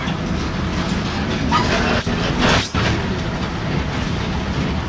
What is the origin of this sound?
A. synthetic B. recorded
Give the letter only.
B